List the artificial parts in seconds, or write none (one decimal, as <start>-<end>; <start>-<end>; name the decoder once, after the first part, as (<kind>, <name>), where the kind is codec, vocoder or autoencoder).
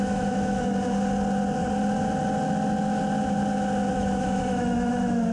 0.0-0.7 (autoencoder, DAC-VAE); 3.9-5.3